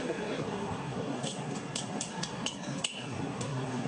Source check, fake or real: fake